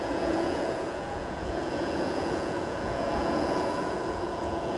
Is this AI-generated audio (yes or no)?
yes